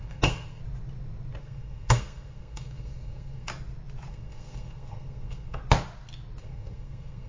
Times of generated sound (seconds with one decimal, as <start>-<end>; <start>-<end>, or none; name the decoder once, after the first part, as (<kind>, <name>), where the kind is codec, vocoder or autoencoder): 0.0-0.6 (codec, SNAC); 1.4-3.5; 4.1-5.6; 6.4-7.3